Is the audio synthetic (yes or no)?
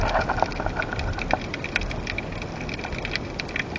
no